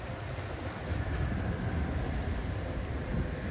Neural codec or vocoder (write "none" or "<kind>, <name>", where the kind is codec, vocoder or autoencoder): none